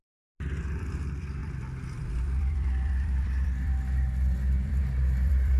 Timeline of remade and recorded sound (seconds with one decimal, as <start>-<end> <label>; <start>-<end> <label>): 0.0-5.6 remade